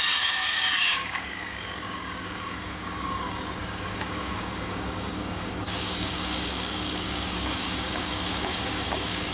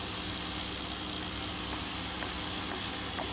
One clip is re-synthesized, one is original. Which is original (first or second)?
second